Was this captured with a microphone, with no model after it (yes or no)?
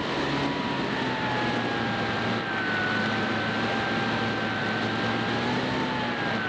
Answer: yes